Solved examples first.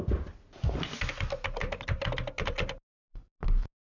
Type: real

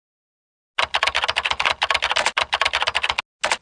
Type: real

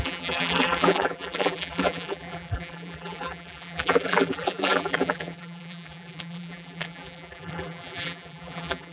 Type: fake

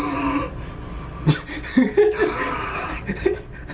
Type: real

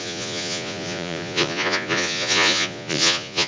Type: fake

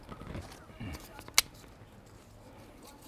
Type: real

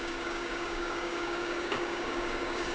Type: fake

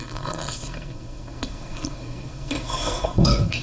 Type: fake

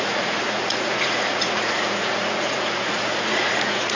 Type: fake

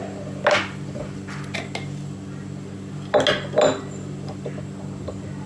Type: real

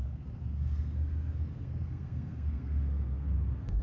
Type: fake